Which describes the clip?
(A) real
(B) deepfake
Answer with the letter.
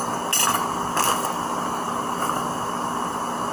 A